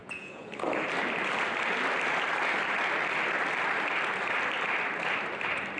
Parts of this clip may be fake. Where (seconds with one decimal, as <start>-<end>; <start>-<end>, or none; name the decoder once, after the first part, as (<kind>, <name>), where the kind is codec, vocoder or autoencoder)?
0.0-0.5 (vocoder, Vocos)